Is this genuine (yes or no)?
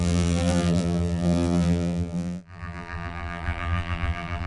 no